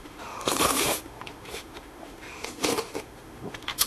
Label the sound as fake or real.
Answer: fake